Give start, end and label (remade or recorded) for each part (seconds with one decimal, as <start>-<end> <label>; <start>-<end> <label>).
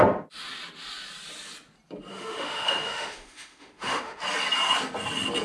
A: 0.0-2.1 recorded; 2.1-4.2 remade; 4.2-5.4 recorded